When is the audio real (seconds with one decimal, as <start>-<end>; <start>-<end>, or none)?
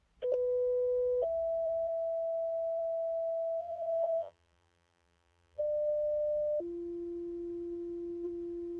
0.0-3.6; 5.6-8.8